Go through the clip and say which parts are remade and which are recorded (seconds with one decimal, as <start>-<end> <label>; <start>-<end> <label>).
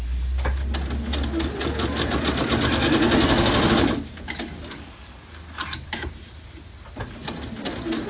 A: 0.0-8.1 recorded